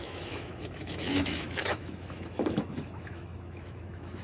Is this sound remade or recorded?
remade